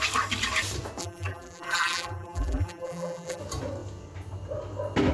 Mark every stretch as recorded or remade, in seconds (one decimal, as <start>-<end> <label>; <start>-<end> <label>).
0.0-1.0 recorded; 1.0-3.4 remade; 3.4-5.1 recorded